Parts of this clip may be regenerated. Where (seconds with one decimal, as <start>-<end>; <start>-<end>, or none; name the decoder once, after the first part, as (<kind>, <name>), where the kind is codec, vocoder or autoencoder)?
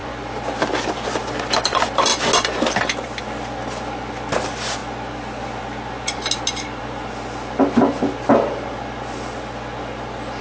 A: none